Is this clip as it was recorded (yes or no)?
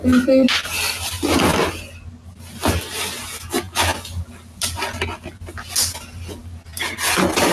yes